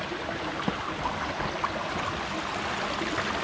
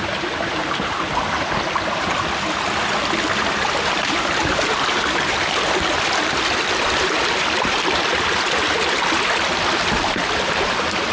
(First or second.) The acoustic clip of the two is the first